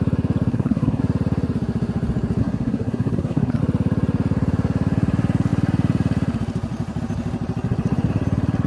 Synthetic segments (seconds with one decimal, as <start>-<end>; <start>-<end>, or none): 0.5-1.0; 2.4-3.6

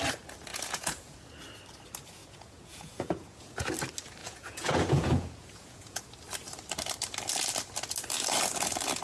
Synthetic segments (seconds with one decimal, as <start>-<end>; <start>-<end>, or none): 0.5-1.3; 2.2-3.6; 4.2-6.0

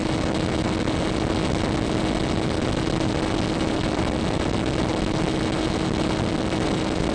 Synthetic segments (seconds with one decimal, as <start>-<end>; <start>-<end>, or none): none

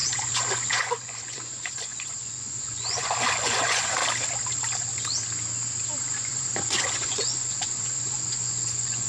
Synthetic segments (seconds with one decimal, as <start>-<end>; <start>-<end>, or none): 0.0-4.0; 6.1-9.1

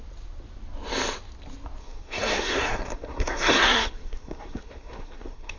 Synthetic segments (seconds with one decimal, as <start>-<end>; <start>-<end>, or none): 1.8-5.6

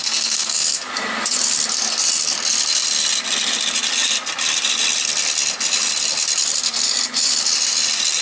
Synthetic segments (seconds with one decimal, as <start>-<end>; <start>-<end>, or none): 0.0-0.8